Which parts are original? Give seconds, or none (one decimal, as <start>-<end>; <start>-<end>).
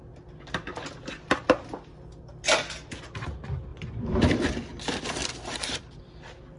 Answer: 0.0-3.7; 4.2-5.2; 6.0-6.6